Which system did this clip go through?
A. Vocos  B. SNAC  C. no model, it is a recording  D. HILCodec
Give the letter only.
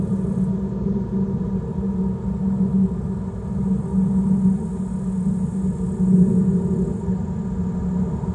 C